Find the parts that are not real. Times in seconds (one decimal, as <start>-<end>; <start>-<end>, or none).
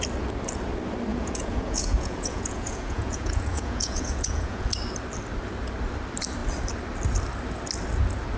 1.1-4.7